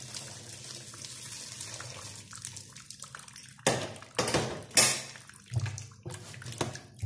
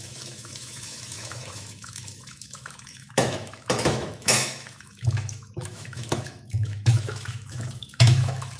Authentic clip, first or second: first